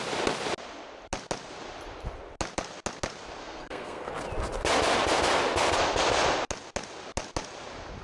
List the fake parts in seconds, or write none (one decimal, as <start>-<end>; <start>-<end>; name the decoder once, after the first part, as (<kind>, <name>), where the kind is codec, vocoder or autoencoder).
3.4-4.1 (codec, SNAC)